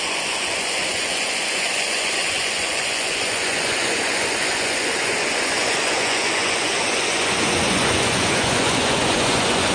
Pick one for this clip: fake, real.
fake